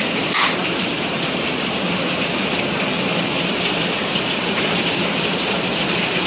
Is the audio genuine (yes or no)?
yes